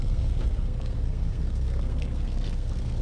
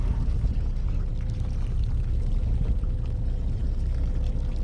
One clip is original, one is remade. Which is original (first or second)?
second